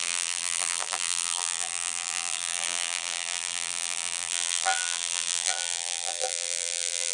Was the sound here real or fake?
fake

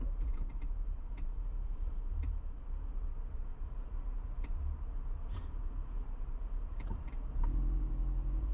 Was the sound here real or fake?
fake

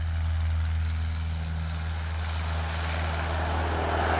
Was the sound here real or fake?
real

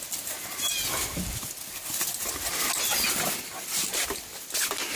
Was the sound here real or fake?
real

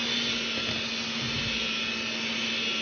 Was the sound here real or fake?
real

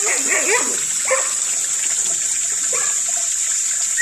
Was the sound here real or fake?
real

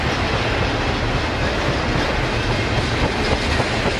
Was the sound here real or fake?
real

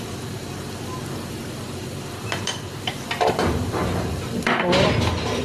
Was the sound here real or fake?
fake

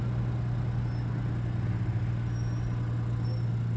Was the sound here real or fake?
real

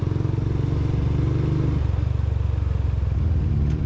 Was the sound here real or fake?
real